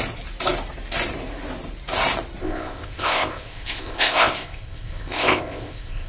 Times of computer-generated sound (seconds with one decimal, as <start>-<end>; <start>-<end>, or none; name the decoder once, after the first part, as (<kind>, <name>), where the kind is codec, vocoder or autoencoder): 2.4-6.1 (codec, ZipCodec)